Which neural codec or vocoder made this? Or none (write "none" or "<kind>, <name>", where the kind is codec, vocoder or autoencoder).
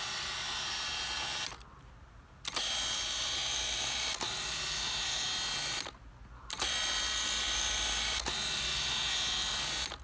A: none